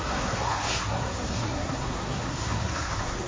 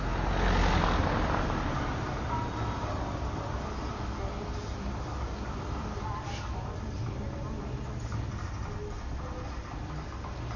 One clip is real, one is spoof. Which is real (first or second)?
second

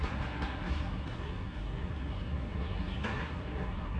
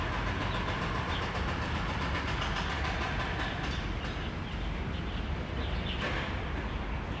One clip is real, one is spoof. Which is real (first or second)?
second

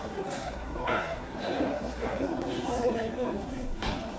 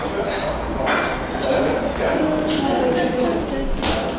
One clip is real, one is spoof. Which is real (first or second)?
second